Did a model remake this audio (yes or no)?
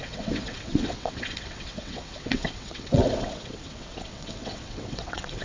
yes